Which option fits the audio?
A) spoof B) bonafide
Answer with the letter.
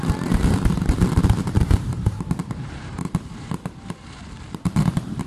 A